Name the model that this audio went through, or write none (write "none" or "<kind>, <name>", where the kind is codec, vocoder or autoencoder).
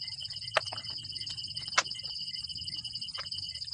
none